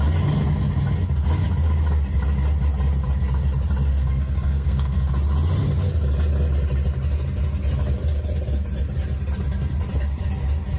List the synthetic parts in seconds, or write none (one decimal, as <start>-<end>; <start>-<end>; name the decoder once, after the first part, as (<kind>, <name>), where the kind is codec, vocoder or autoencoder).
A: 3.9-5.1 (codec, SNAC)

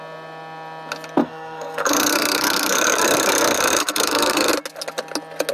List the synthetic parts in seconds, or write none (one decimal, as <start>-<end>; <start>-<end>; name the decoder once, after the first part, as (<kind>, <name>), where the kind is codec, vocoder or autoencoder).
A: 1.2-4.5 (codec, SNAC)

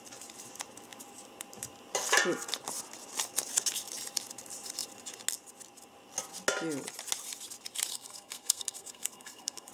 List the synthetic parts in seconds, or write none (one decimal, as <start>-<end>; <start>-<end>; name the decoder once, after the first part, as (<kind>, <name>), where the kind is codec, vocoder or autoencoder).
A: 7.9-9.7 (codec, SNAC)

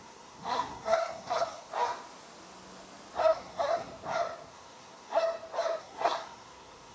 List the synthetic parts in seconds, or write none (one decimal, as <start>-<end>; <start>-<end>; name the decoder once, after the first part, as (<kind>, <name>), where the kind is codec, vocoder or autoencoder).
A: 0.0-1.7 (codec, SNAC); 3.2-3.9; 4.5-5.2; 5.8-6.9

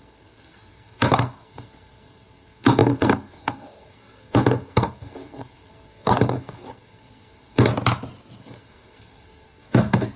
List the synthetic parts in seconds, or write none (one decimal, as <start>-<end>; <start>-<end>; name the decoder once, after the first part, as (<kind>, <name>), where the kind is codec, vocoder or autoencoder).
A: 0.0-7.7 (codec, SNAC); 8.4-10.2

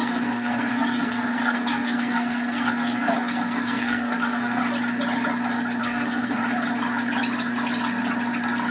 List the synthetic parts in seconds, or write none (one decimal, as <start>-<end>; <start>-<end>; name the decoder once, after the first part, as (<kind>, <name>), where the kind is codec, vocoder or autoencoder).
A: 0.0-4.6 (codec, SNAC); 5.8-6.4